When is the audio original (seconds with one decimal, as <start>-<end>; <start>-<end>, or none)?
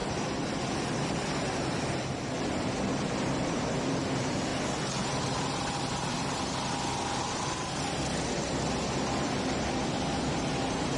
0.0-0.6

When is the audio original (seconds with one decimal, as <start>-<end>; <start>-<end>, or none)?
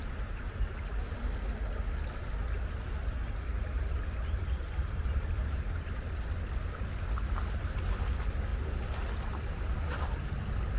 0.7-2.4; 6.0-10.8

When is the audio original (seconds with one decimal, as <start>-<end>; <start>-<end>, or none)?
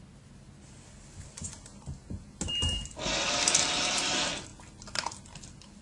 0.0-5.8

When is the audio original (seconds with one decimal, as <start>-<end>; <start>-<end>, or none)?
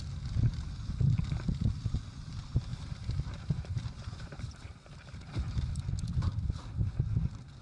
0.0-2.7; 5.7-7.6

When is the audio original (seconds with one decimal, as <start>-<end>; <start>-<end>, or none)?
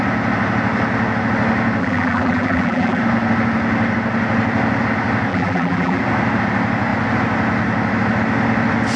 0.0-1.8; 3.0-5.3; 6.0-9.0